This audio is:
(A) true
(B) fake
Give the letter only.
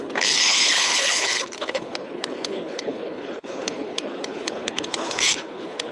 B